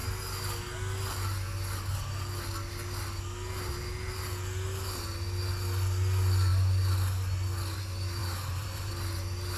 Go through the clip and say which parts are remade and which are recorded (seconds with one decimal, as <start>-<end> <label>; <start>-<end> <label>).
0.0-8.2 recorded; 8.2-8.9 remade; 8.9-9.6 recorded